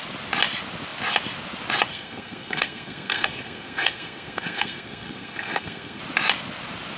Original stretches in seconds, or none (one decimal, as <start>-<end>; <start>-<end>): 0.0-1.9; 6.0-7.0